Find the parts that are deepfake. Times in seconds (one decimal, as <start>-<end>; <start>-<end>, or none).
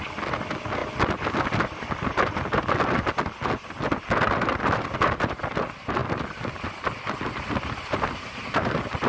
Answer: none